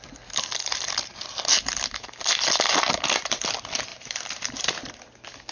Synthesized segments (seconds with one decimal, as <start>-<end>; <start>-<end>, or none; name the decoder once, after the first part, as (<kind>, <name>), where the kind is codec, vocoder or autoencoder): 3.9-4.9 (vocoder, BigVGAN v2)